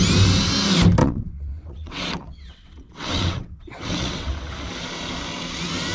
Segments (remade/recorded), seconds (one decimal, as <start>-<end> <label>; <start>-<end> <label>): 0.0-1.0 recorded; 1.0-4.5 remade; 4.5-5.9 recorded